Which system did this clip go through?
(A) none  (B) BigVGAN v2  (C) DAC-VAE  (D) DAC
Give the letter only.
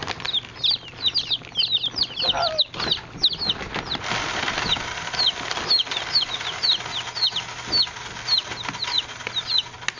A